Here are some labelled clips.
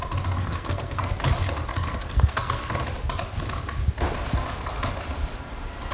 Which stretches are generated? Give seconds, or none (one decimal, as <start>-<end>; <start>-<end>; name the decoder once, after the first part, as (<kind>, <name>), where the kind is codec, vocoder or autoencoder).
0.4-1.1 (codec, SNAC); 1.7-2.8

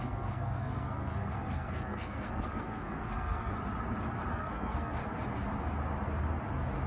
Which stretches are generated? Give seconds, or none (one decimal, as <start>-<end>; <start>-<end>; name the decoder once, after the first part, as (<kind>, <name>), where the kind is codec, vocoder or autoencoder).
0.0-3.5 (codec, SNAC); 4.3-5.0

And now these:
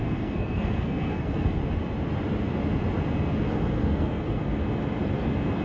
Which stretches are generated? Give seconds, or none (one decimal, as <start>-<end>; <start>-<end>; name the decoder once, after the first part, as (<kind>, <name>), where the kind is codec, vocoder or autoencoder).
0.0-1.6 (codec, SNAC); 3.5-4.4

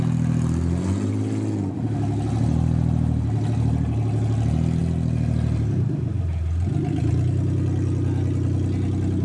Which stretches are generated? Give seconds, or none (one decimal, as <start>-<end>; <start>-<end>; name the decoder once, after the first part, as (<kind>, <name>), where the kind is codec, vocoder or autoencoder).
none

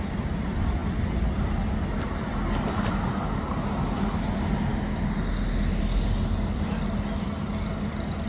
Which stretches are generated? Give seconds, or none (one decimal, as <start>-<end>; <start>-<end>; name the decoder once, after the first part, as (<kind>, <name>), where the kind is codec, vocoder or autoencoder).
none